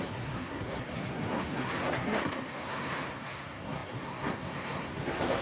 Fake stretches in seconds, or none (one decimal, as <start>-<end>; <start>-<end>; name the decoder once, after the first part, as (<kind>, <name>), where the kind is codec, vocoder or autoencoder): 0.0-5.4 (codec, SNAC)